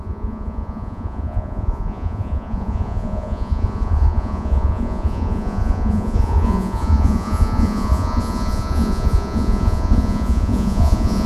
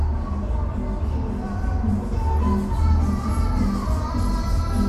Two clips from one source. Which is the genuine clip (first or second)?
second